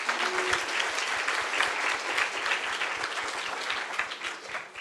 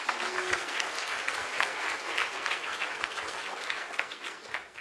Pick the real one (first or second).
first